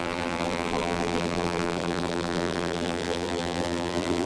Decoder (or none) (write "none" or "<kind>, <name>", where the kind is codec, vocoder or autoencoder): vocoder, BigVGAN v2